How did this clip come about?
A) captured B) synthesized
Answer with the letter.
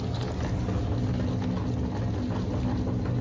A